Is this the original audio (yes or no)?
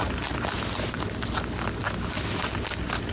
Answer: yes